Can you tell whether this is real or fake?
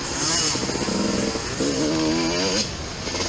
real